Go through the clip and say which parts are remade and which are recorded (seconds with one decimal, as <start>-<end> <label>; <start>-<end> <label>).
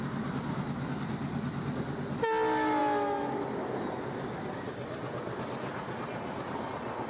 0.0-7.1 recorded